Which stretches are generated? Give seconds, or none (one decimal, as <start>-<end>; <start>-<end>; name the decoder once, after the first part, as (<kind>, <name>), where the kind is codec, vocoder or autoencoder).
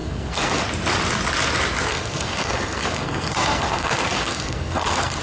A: 0.0-0.6 (codec, SNAC); 1.9-5.2